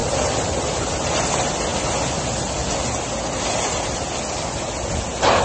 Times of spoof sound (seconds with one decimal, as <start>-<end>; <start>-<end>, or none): none